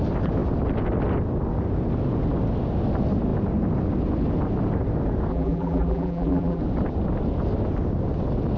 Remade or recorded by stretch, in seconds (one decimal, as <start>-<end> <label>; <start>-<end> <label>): 0.0-5.3 recorded; 5.3-6.6 remade; 6.6-8.6 recorded

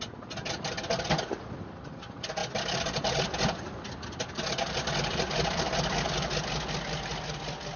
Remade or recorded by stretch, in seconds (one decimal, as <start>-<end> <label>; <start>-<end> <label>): 0.0-7.8 recorded

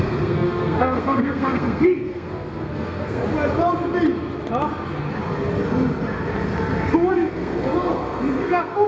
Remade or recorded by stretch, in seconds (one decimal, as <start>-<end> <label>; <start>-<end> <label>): 0.0-3.2 remade; 3.2-7.1 recorded; 7.1-8.9 remade

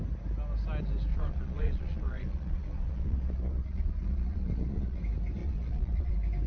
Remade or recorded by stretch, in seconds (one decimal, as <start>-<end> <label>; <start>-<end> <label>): 0.0-1.1 recorded; 1.1-5.0 remade; 5.0-5.4 recorded; 5.4-6.1 remade; 6.1-6.5 recorded

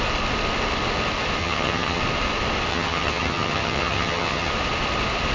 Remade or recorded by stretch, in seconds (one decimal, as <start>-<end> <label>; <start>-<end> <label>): 0.0-1.4 recorded; 1.4-2.0 remade; 2.0-2.7 recorded; 2.7-4.5 remade; 4.5-5.3 recorded